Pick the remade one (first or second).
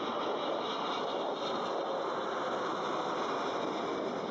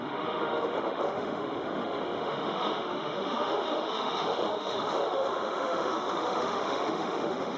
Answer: second